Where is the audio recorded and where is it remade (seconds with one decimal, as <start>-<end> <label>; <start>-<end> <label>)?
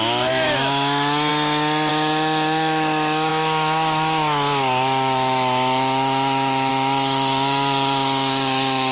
0.0-1.3 remade; 1.3-1.9 recorded; 1.9-8.9 remade